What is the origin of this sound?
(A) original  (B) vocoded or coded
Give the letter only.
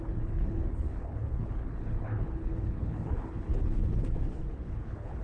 B